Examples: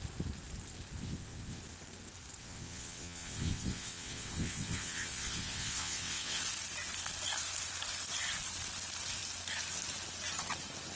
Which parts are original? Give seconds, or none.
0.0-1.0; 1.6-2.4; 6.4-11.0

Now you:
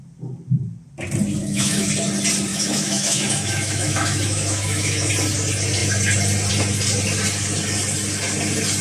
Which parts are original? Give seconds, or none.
0.0-1.4; 1.9-2.5; 5.1-8.8